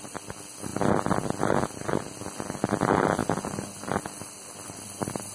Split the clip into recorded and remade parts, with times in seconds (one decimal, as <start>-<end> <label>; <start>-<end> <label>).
0.0-5.3 recorded